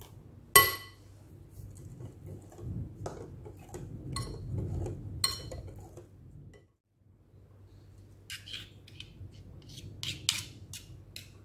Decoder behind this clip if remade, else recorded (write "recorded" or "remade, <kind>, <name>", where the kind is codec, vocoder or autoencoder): recorded